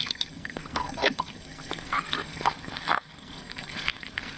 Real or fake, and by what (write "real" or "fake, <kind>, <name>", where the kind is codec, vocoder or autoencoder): fake, codec, SNAC